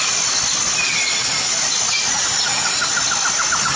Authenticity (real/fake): real